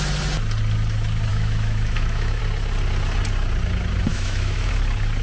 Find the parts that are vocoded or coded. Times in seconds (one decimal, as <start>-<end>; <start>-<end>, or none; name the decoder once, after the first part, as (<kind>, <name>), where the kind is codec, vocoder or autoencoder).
1.3-2.4 (autoencoder, DAC-VAE); 4.1-4.7